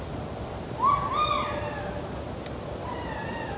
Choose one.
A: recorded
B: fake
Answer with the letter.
A